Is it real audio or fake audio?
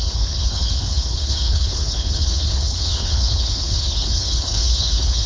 fake